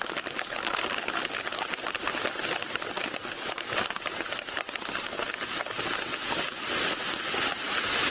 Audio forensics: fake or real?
real